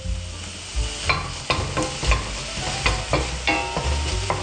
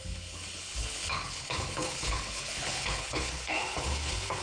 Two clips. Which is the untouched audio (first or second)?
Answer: first